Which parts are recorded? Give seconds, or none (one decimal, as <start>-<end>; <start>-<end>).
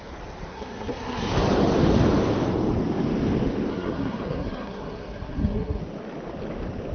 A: 0.0-0.5; 1.3-3.7; 5.8-6.9